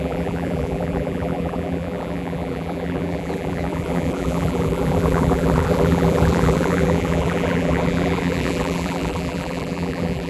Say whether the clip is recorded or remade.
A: remade